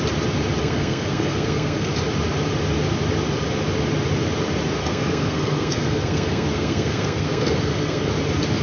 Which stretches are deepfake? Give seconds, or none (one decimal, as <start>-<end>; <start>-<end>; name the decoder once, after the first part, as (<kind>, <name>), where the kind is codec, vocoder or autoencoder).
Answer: 0.6-1.9 (codec, SNAC); 4.8-8.1